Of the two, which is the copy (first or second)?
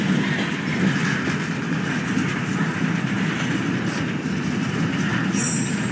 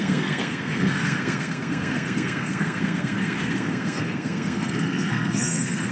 second